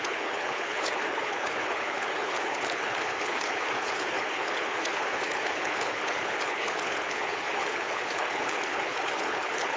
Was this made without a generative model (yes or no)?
no